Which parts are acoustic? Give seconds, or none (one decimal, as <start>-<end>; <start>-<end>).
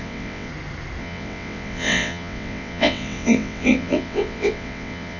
0.5-1.0